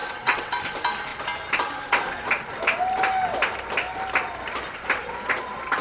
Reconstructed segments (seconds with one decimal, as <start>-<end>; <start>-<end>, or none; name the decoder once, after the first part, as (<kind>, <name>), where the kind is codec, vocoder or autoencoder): 0.0-0.5 (vocoder, WaveNeXt)